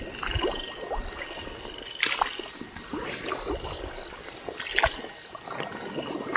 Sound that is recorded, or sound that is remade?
recorded